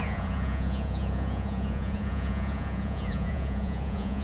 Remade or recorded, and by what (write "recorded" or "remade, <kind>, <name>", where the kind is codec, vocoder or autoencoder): remade, vocoder, Vocos